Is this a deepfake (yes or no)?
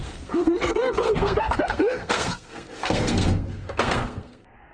yes